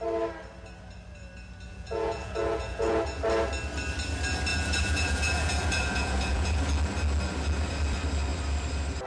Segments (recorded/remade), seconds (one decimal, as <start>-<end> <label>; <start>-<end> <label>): 0.0-1.7 recorded; 1.7-3.2 remade; 3.2-4.5 recorded; 4.5-6.6 remade; 6.6-9.1 recorded